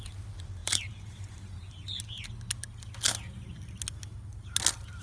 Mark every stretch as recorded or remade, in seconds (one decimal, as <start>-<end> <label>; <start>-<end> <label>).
0.0-1.9 remade; 1.9-5.0 recorded